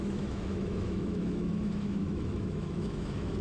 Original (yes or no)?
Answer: no